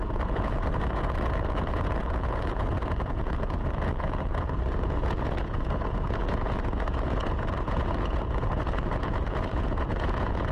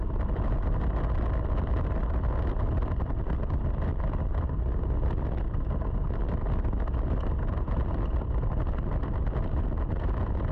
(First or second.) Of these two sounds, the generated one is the first